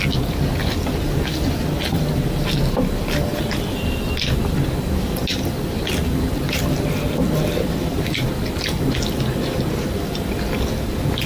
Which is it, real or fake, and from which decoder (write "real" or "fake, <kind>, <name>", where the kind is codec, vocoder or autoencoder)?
real